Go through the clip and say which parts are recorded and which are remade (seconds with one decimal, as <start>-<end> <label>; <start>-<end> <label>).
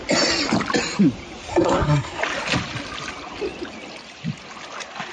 0.0-1.5 recorded; 1.5-2.2 remade; 2.2-5.1 recorded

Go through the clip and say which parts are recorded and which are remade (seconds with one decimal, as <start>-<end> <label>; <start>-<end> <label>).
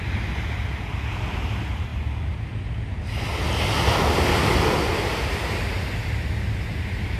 0.0-7.2 recorded